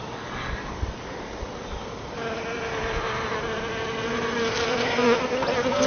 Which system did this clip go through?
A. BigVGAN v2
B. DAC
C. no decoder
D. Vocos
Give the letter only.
C